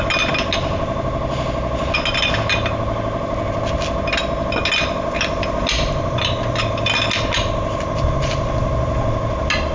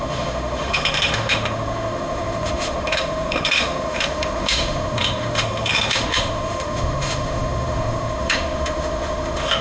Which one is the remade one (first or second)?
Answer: second